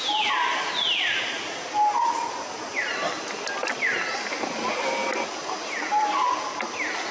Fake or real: real